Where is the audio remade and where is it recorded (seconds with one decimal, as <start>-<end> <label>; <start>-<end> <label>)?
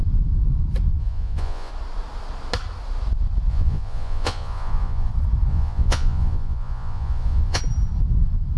0.0-1.0 recorded; 1.0-1.7 remade; 1.7-3.5 recorded; 3.5-5.1 remade; 5.1-5.5 recorded; 5.5-7.6 remade; 7.6-8.6 recorded